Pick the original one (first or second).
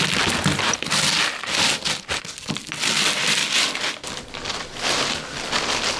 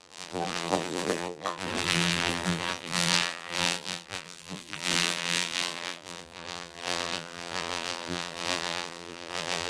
first